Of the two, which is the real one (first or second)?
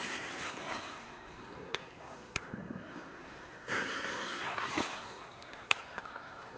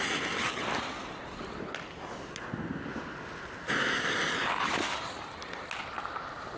second